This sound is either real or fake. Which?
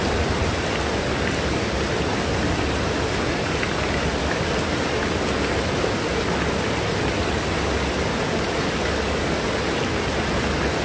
real